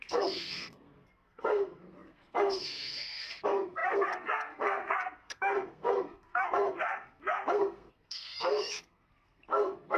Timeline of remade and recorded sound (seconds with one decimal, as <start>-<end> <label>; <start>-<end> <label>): 0.0-10.0 remade

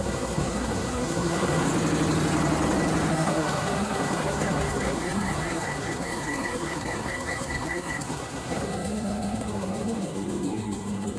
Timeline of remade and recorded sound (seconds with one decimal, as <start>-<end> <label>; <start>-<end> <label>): 0.0-1.7 remade; 1.7-3.1 recorded; 3.1-11.2 remade

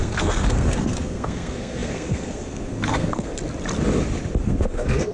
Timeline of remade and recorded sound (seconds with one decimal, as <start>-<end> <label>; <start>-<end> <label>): 0.0-3.3 remade; 3.3-4.4 recorded; 4.4-5.1 remade

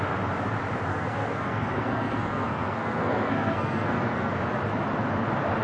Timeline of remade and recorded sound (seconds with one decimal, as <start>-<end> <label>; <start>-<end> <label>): 0.0-0.9 recorded; 0.9-4.3 remade; 4.3-5.6 recorded

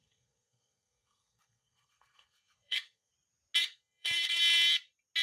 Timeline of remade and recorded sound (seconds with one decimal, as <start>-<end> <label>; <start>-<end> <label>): 0.0-3.1 remade; 3.1-3.6 recorded; 3.6-4.4 remade; 4.4-5.2 recorded